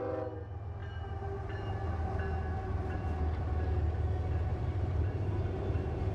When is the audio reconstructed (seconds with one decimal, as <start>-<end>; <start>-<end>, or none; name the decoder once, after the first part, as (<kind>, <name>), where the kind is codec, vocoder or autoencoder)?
4.5-5.2 (vocoder, BigVGAN v2)

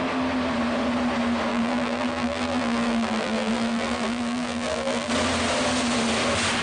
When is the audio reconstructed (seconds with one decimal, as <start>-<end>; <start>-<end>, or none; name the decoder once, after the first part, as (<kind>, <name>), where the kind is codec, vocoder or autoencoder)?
1.5-5.1 (vocoder, BigVGAN v2)

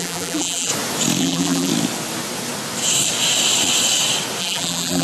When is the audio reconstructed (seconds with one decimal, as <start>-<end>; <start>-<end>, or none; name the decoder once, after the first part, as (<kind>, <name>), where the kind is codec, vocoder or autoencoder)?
0.0-0.7 (vocoder, BigVGAN v2); 1.2-1.7; 4.4-5.0

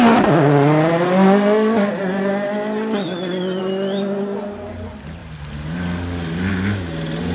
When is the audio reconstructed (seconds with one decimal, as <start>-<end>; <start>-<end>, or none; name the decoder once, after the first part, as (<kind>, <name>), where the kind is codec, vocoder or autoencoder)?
none

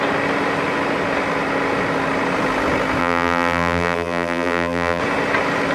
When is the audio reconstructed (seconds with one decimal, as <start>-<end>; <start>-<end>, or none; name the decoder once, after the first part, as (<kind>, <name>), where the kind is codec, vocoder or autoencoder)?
3.0-5.0 (vocoder, BigVGAN v2)

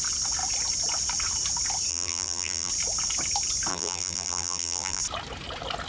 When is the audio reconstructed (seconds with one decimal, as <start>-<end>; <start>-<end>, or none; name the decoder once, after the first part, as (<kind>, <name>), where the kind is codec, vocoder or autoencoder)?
1.9-2.7 (vocoder, BigVGAN v2); 3.7-5.0

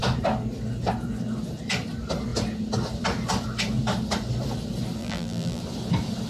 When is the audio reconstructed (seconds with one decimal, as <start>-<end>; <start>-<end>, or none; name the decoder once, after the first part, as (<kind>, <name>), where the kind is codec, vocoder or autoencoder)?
5.0-5.6 (vocoder, BigVGAN v2)